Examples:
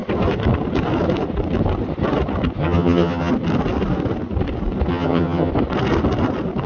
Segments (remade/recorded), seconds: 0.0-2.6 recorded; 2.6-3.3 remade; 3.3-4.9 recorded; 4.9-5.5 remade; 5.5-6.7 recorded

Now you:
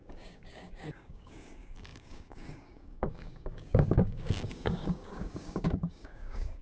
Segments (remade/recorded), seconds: 0.0-6.6 remade